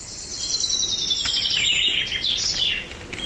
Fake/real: real